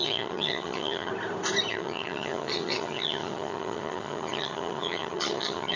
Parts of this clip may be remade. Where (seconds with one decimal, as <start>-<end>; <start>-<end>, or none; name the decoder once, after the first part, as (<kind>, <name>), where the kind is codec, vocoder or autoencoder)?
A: 0.0-1.1 (vocoder, HiFi-GAN); 1.7-5.8

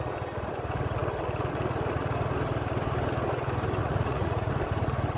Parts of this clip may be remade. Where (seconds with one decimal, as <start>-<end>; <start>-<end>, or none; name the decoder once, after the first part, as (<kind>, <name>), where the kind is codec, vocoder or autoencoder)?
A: 3.8-4.5 (vocoder, Vocos)

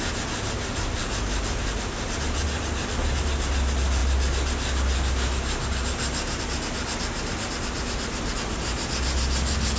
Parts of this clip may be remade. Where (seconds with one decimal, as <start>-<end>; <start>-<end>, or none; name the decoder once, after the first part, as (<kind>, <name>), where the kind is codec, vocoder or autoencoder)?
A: none

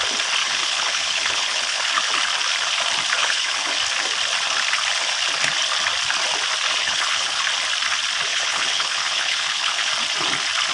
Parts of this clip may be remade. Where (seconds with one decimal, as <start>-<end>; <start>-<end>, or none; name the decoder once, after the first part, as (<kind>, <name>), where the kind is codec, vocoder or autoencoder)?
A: 0.4-1.9 (codec, HILCodec); 3.2-3.7; 6.8-7.4; 8.3-9.9

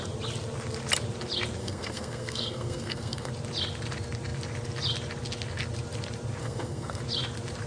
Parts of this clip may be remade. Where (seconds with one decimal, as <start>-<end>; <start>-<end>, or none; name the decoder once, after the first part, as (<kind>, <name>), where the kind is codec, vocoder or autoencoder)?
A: 1.6-3.3 (codec, SNAC); 6.4-7.0

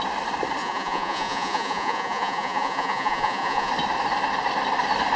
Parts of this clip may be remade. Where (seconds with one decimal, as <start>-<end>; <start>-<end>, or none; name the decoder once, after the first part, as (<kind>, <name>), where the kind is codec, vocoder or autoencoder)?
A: 0.6-3.7 (vocoder, Vocos)

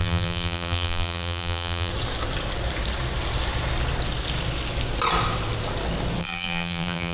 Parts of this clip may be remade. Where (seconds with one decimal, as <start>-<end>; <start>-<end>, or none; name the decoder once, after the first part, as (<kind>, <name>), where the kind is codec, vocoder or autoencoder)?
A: 0.0-1.9 (vocoder, BigVGAN v2); 6.2-7.1

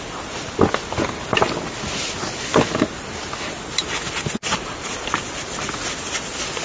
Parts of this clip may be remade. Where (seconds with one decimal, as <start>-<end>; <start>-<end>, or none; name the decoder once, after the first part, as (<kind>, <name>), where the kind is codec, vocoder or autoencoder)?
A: none